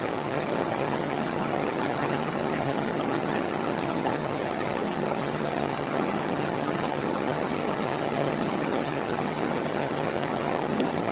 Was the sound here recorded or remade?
remade